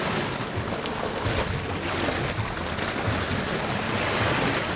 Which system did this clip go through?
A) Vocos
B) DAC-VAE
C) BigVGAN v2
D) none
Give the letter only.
D